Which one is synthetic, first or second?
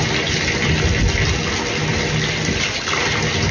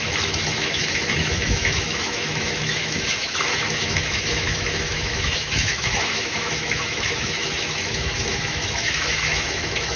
second